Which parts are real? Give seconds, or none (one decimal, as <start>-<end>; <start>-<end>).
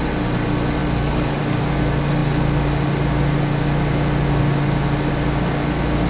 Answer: 0.0-0.8; 1.4-6.1